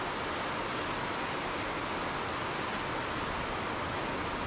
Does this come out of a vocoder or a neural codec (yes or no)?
no